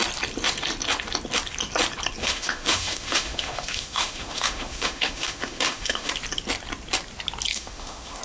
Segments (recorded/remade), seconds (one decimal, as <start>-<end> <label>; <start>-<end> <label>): 0.0-2.2 recorded; 2.2-6.1 remade; 6.1-7.5 recorded; 7.5-8.2 remade